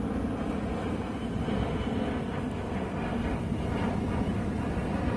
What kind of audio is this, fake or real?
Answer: real